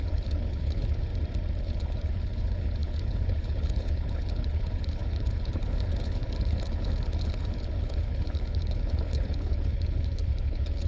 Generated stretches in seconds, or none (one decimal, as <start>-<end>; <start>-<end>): 0.0-1.1; 1.6-10.9